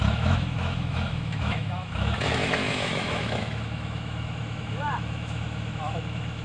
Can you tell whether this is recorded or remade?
remade